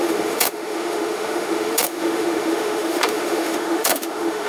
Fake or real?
fake